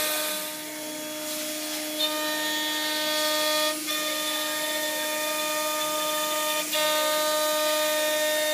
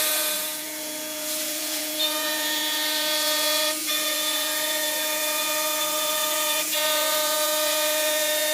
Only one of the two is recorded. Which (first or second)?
first